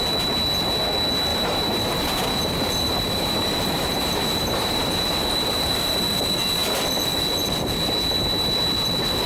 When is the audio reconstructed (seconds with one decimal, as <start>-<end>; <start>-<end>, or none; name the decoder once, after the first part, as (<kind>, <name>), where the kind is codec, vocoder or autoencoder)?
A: 1.3-5.9 (vocoder, BigVGAN v2)